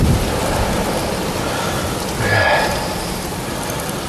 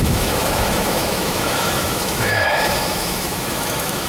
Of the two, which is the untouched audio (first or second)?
first